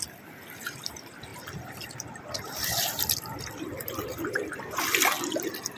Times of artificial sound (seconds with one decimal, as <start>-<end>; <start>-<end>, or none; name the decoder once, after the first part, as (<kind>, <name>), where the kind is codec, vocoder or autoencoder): 1.3-4.8 (vocoder, BigVGAN v2)